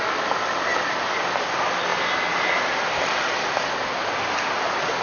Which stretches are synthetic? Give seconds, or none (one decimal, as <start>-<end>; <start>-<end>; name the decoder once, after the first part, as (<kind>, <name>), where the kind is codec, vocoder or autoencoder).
none